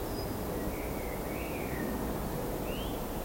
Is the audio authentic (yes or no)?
yes